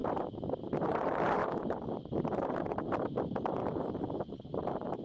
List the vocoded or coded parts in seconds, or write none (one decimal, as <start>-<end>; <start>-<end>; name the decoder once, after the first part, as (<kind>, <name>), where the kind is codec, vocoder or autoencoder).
0.6-1.4 (vocoder, BigVGAN v2); 2.5-3.6; 4.6-5.0